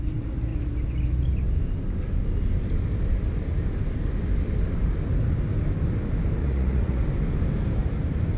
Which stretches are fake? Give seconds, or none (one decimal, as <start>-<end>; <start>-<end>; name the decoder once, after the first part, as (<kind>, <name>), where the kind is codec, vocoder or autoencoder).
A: 6.4-7.0 (vocoder, Vocos)